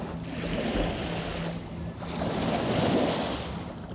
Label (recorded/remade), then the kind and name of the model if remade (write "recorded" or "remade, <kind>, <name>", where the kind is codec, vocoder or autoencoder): recorded